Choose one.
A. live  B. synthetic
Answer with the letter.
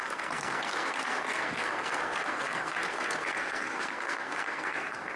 B